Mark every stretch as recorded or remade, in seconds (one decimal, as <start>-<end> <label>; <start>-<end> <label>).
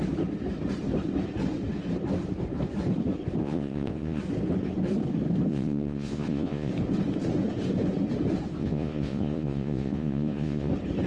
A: 0.0-3.4 recorded; 3.4-4.2 remade; 4.2-5.5 recorded; 5.5-6.7 remade; 6.7-8.6 recorded; 8.6-10.7 remade; 10.7-11.1 recorded